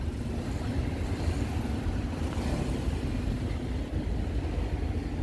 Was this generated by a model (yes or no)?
no